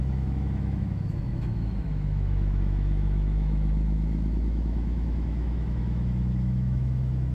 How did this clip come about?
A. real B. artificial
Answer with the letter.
B